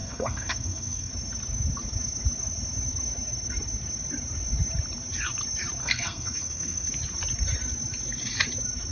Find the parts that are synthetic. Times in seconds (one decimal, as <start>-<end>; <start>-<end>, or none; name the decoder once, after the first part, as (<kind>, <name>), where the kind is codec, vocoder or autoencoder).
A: 0.0-1.1 (codec, SNAC); 5.8-6.9